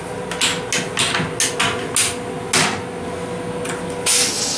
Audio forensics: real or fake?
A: real